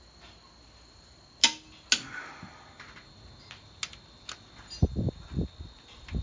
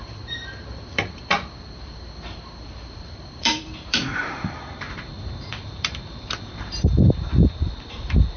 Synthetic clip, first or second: second